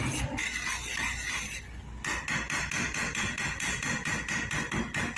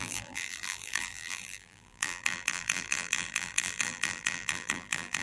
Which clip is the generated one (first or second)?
second